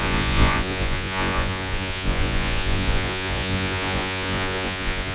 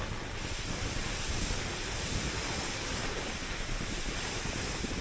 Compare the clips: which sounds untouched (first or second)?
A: second